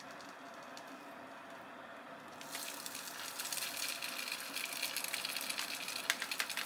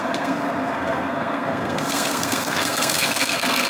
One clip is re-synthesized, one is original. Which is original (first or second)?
first